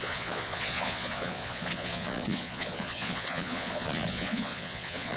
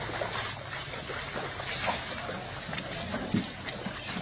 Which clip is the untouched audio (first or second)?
second